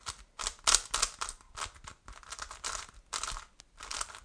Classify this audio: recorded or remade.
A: recorded